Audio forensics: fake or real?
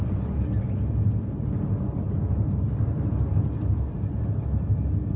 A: real